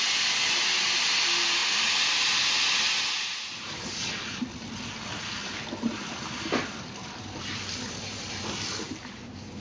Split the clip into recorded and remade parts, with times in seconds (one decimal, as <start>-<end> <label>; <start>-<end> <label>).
0.0-9.6 recorded